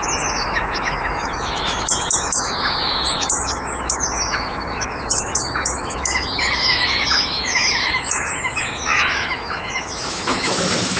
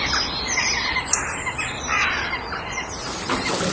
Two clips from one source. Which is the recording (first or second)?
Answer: second